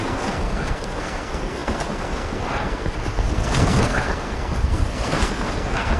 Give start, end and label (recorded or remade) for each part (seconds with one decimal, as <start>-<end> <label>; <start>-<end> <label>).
0.0-6.0 remade